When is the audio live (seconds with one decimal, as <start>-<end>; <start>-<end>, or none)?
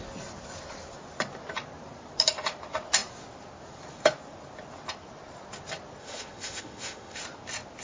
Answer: 0.0-6.0; 7.2-7.8